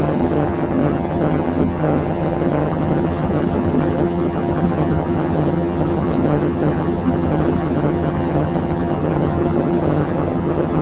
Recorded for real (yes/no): no